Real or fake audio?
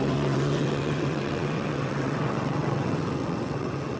fake